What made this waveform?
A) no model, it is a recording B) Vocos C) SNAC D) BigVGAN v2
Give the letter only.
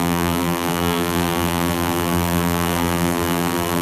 D